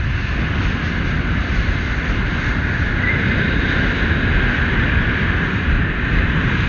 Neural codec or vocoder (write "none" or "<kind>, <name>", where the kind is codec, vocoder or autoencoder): none